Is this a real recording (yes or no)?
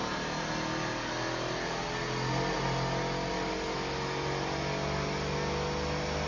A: yes